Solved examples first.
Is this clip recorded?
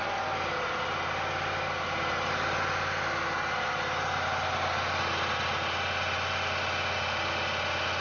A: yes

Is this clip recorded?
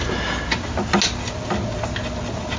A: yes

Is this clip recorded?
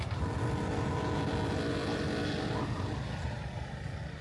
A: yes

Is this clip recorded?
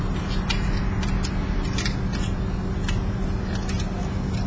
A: yes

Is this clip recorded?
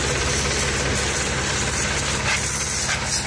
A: yes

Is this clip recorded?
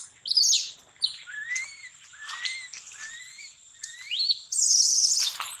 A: yes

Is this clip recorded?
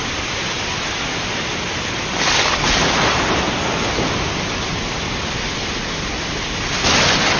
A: yes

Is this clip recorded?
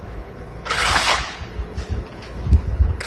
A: no